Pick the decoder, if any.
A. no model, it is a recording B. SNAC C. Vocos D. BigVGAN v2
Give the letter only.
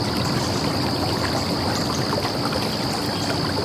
A